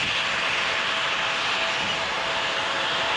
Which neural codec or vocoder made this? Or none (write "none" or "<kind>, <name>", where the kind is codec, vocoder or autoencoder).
none